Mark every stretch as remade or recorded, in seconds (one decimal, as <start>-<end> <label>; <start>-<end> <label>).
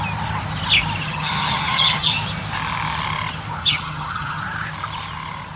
0.0-1.0 recorded; 1.0-2.1 remade; 2.1-3.6 recorded; 3.6-4.4 remade; 4.4-5.6 recorded